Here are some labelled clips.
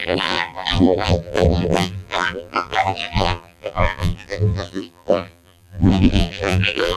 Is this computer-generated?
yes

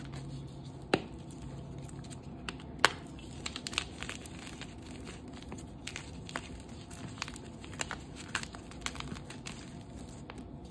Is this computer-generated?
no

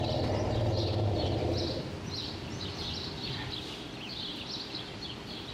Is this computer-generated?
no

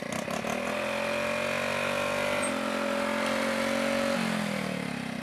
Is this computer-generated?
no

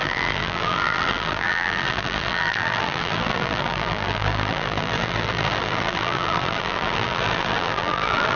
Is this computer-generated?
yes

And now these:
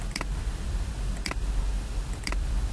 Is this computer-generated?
yes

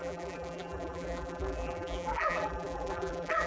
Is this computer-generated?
yes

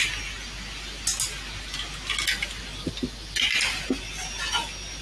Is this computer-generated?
no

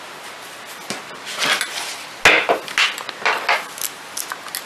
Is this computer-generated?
no